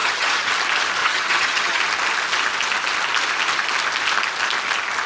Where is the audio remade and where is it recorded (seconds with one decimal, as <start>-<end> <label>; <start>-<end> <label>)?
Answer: 0.0-0.5 remade; 0.5-1.0 recorded; 1.0-1.8 remade; 1.8-5.1 recorded